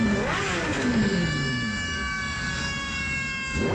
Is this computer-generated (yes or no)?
yes